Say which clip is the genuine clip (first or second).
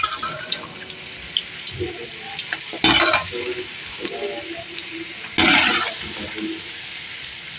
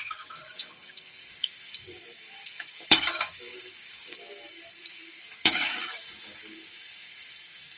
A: first